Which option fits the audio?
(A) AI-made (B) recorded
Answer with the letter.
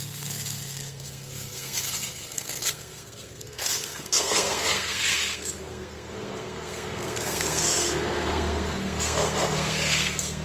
A